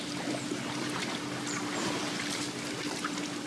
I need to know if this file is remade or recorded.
recorded